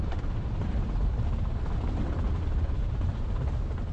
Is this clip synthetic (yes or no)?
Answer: yes